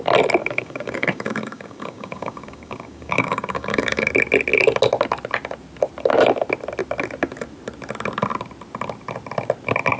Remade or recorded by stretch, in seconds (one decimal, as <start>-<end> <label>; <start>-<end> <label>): 0.0-0.4 recorded; 0.4-4.1 remade; 4.1-10.0 recorded